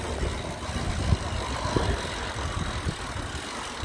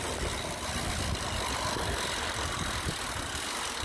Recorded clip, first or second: first